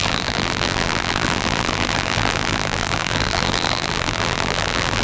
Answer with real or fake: fake